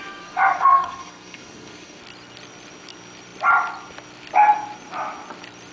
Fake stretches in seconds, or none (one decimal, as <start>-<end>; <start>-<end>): 0.0-2.0